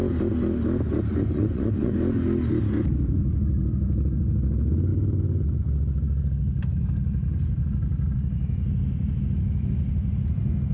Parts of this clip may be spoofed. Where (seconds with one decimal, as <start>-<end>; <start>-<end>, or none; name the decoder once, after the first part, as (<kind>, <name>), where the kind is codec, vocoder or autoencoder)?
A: 1.1-1.9 (vocoder, Vocos)